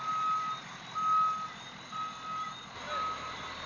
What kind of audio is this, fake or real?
real